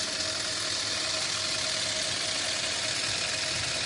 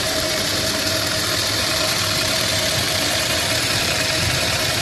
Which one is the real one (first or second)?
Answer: first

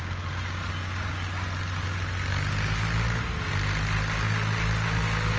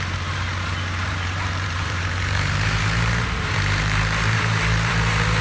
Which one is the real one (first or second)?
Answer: first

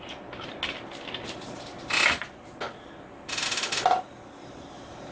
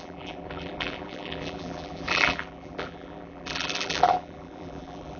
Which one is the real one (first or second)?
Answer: first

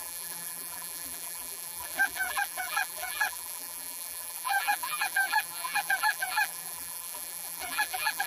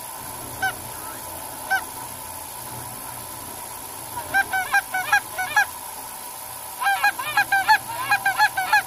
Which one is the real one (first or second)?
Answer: second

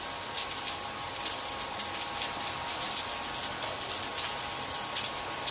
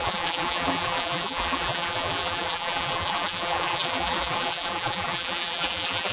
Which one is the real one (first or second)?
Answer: first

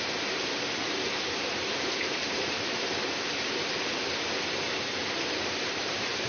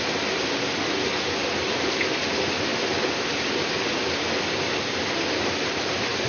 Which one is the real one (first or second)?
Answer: second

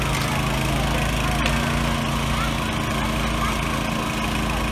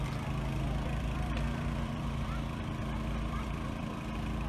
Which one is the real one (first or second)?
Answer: first